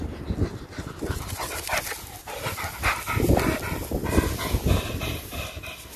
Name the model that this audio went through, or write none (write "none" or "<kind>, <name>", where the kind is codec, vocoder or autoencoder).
none